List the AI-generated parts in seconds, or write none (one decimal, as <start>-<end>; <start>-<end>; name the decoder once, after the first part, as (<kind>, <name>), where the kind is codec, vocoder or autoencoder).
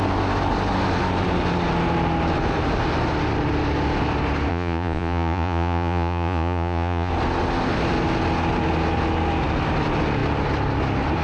4.5-7.1 (vocoder, Vocos)